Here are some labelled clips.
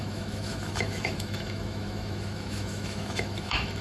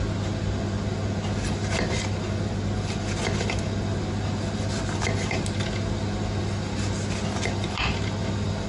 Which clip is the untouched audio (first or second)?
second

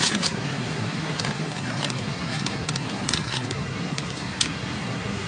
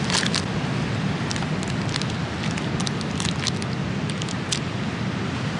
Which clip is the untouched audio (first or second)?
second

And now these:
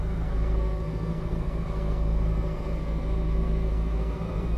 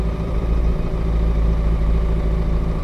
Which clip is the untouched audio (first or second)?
second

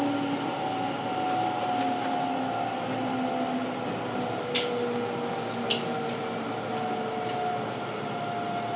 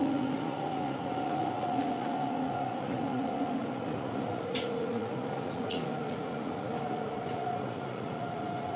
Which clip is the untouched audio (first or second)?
first